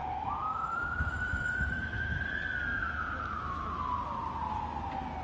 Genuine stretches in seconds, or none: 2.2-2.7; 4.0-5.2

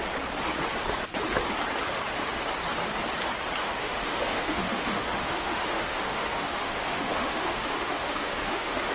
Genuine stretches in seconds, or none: 0.0-3.6

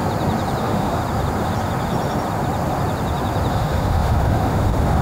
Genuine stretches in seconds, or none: 0.0-0.6; 1.0-3.5